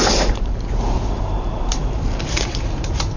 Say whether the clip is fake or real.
fake